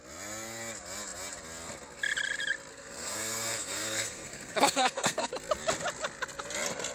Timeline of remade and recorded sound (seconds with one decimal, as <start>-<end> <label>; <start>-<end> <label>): 0.0-2.7 recorded; 2.7-5.3 remade; 5.3-6.9 recorded